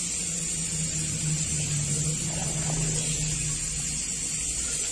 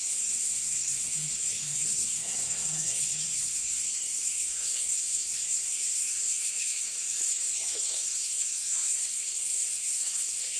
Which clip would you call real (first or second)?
first